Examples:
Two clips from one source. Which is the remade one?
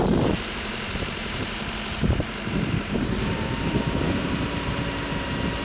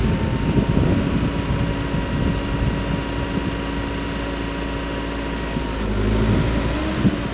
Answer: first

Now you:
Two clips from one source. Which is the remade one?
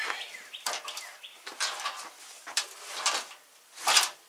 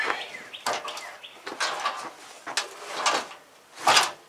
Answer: first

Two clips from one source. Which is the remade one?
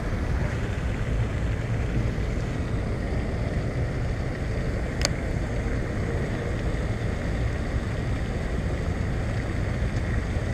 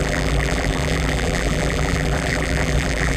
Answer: second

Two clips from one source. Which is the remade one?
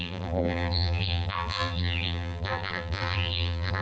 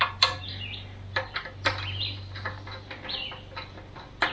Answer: first